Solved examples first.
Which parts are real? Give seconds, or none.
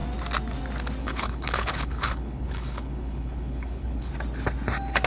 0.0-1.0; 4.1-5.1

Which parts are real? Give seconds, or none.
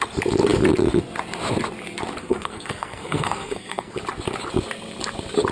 0.0-2.2; 4.0-5.5